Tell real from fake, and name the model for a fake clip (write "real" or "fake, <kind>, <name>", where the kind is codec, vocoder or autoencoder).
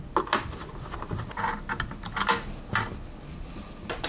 real